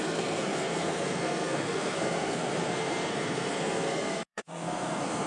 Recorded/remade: remade